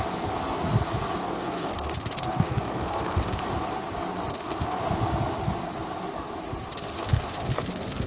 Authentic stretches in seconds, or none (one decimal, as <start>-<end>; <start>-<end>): 0.0-1.2; 3.4-4.3; 4.8-6.7